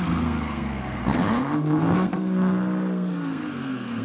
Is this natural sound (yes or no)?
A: no